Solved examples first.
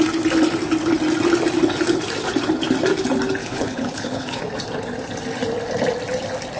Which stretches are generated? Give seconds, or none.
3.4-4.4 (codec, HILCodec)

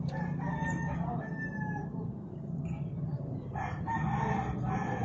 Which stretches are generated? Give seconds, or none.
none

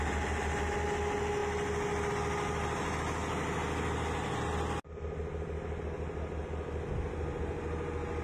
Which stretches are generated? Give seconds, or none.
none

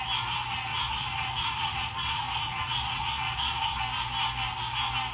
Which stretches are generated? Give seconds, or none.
0.7-3.8 (vocoder, Vocos)

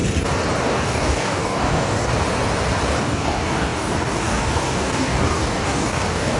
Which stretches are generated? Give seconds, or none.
0.6-2.1 (codec, DAC); 3.0-6.4

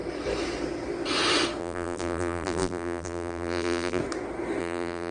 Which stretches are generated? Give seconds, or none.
1.6-4.0 (vocoder, BigVGAN v2); 4.6-5.1